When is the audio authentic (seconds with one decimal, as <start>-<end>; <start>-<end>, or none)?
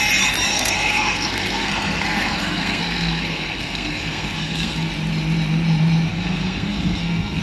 0.0-0.5; 4.9-6.1